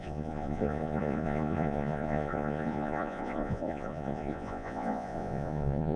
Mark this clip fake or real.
fake